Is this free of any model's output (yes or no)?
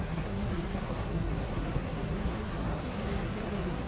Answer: no